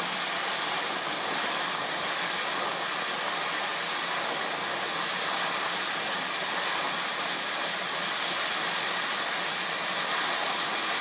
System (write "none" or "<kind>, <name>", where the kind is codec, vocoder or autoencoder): none